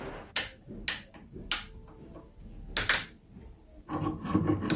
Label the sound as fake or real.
real